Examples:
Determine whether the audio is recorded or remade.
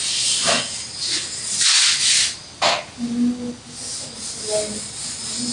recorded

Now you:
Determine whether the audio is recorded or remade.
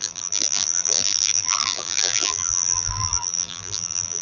remade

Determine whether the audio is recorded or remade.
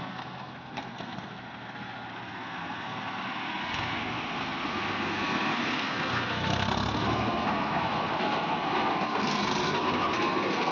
remade